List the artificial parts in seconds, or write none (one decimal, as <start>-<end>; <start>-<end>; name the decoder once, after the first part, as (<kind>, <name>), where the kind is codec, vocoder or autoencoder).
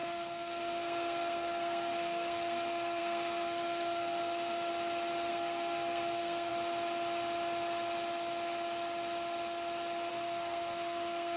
0.0-4.7 (codec, SNAC); 5.3-6.5; 10.1-11.4